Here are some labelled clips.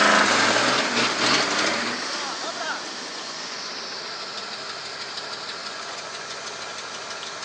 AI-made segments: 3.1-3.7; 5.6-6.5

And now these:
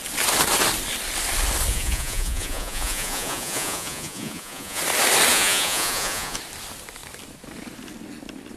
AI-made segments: 1.7-4.8; 5.3-6.4

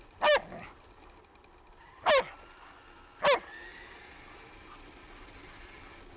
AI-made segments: 3.7-4.5

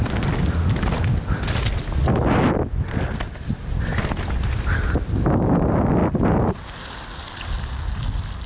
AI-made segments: none

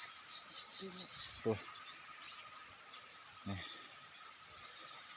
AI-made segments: none

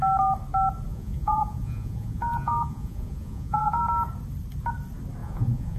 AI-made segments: 0.9-3.8; 5.2-5.8

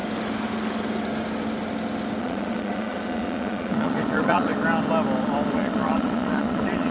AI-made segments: 2.2-4.5; 5.5-6.9

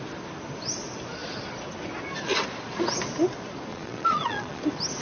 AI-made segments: 3.7-4.6